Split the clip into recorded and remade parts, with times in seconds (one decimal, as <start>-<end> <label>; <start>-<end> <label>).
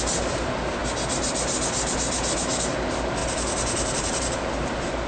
0.0-3.2 recorded; 3.2-4.5 remade; 4.5-5.1 recorded